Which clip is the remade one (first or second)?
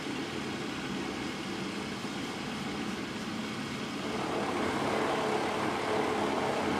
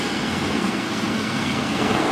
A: second